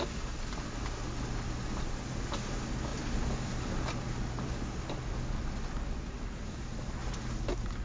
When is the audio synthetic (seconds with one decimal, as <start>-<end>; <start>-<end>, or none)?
none